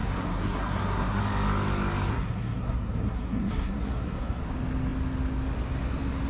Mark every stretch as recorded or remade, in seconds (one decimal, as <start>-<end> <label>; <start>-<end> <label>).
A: 0.0-1.2 remade; 1.2-2.1 recorded; 2.1-4.4 remade; 4.4-6.3 recorded